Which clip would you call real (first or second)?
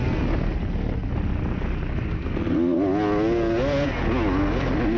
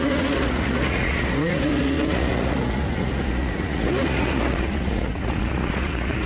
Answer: first